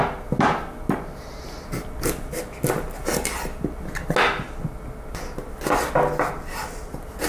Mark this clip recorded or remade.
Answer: recorded